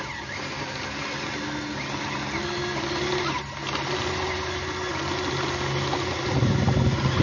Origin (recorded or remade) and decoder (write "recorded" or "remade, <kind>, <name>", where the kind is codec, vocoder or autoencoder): recorded